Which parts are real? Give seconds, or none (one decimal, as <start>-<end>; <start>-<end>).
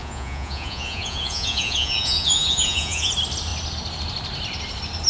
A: 3.1-5.1